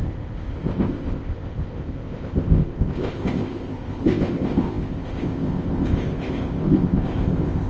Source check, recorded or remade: remade